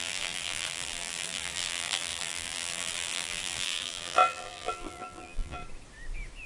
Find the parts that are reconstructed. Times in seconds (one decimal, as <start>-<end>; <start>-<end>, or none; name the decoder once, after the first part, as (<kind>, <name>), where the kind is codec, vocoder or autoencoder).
0.0-5.6 (vocoder, BigVGAN v2)